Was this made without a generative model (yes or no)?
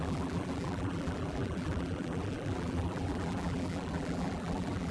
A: no